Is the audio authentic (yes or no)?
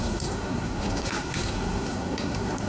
no